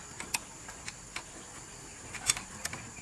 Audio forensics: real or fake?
real